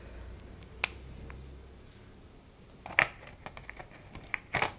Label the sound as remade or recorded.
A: recorded